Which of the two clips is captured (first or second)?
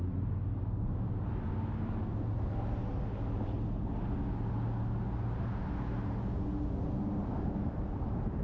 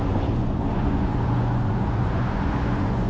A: first